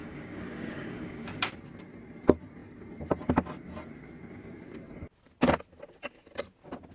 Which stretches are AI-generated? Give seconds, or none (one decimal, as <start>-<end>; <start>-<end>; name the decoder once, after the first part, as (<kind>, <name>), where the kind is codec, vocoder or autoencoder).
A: 0.0-1.5 (codec, DAC)